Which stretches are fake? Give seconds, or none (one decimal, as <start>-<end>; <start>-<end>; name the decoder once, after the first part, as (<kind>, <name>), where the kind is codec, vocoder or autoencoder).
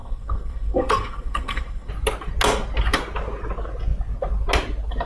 0.0-1.9 (codec, SNAC)